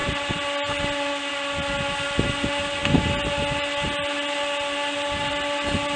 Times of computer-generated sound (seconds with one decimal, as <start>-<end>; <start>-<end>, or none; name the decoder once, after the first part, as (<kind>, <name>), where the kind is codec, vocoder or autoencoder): none